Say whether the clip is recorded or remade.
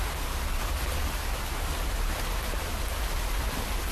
recorded